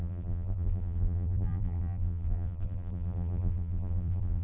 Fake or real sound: fake